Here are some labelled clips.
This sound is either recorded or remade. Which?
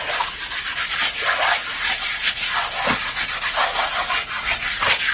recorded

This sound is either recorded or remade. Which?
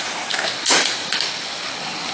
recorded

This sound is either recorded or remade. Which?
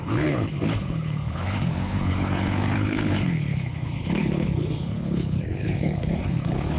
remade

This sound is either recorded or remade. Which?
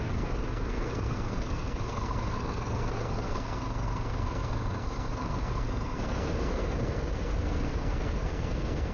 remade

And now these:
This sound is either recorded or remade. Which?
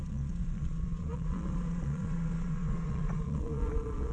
remade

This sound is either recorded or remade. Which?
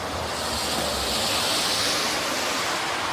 recorded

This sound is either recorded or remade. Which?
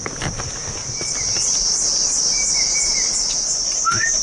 recorded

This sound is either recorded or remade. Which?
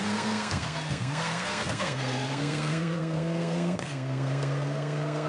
remade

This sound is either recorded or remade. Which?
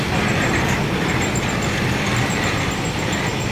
remade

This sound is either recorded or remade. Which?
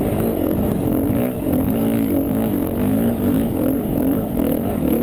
remade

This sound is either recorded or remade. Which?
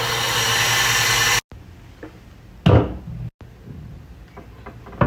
recorded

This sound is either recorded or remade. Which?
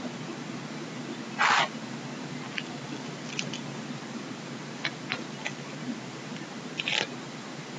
recorded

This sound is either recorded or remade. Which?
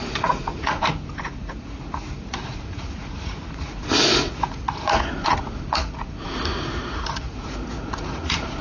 remade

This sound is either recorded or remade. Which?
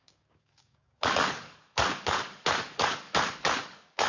remade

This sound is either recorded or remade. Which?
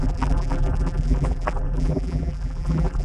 remade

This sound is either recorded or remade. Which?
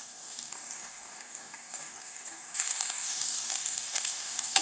remade